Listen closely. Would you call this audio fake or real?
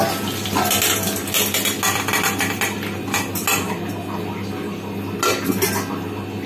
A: real